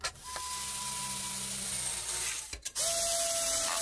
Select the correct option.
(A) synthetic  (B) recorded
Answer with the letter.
B